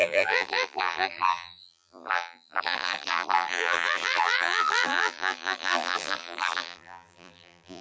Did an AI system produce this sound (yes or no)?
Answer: yes